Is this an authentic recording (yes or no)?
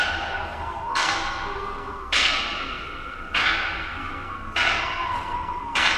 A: no